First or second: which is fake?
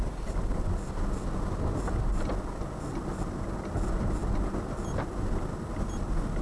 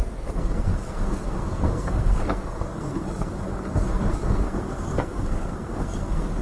second